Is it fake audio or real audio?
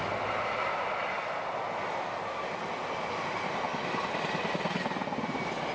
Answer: real